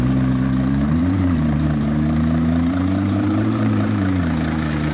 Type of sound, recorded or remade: remade